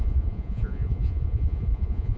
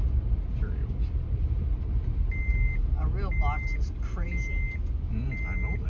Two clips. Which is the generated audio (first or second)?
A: first